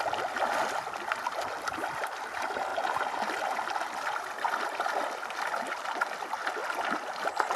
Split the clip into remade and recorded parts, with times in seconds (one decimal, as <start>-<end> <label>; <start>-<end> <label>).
0.0-7.6 recorded